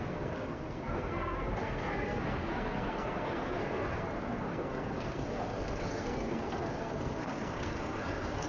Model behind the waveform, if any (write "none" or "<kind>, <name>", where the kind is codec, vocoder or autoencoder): codec, SNAC